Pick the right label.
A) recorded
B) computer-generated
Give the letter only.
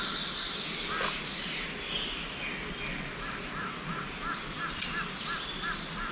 A